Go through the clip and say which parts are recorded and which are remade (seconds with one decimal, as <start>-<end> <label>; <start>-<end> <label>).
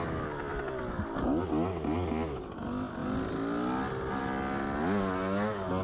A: 0.0-5.8 recorded